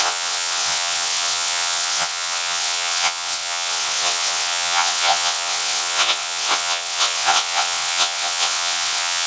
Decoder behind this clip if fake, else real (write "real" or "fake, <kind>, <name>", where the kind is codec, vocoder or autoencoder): fake, vocoder, WaveNeXt